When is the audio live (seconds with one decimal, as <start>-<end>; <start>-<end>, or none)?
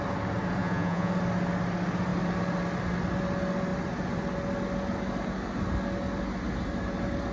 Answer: 0.0-0.6; 1.1-7.3